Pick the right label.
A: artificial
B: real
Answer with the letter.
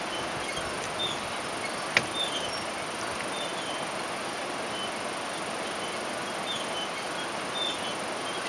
B